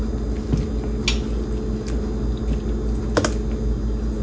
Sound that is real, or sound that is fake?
real